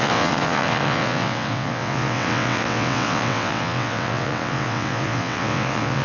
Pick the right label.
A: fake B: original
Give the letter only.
A